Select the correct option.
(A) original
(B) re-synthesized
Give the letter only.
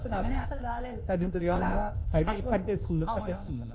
B